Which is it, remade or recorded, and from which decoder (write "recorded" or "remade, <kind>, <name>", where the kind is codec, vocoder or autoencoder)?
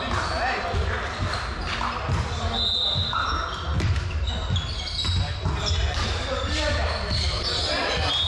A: recorded